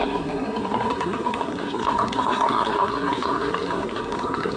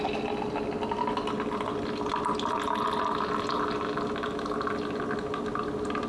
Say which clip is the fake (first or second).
first